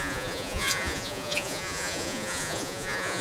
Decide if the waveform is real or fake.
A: fake